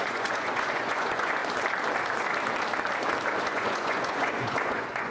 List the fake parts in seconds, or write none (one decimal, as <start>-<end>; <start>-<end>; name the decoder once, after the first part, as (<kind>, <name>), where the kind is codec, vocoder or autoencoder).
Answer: 0.0-1.4 (vocoder, Vocos); 3.4-5.1